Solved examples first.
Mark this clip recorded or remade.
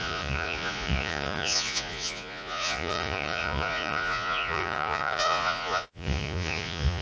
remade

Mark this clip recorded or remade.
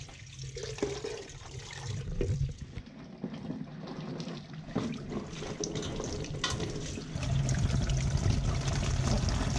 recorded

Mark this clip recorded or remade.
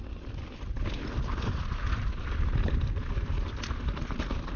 recorded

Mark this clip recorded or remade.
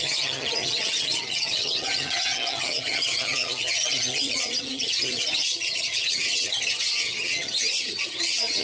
remade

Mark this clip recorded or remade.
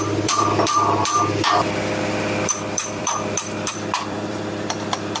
remade